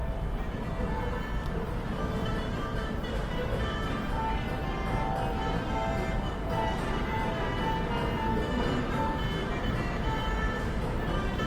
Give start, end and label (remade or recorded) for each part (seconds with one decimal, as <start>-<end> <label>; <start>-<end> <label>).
0.0-0.7 remade; 0.7-2.2 recorded; 2.2-3.2 remade; 3.2-5.9 recorded; 5.9-7.3 remade; 7.3-9.4 recorded; 9.4-11.5 remade